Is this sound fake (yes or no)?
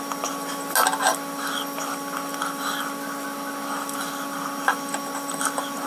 no